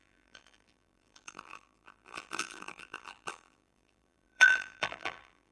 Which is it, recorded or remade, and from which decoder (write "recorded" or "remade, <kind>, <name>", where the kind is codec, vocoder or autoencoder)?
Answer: remade, vocoder, BigVGAN v2